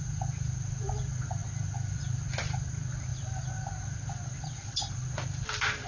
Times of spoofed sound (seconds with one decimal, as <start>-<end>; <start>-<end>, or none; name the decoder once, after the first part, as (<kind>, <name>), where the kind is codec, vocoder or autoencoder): none